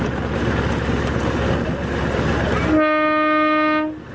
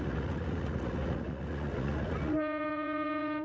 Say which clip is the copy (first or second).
second